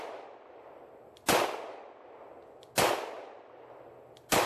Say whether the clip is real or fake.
real